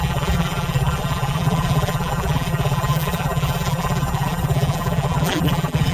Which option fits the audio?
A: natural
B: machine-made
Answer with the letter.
B